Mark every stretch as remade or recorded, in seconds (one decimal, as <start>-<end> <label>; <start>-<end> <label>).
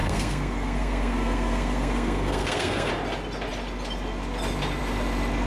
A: 0.0-2.9 remade; 2.9-5.5 recorded